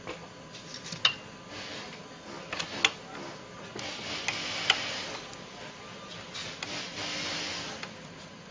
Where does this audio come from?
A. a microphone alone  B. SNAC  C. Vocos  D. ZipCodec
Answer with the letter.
A